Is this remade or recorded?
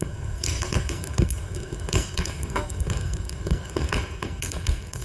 remade